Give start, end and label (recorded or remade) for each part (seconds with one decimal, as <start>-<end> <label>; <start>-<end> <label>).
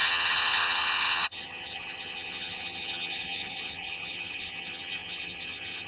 0.0-5.9 remade